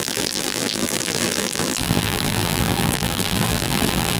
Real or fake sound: fake